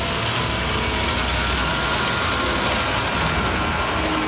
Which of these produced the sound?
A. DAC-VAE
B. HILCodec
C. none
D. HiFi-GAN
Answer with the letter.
C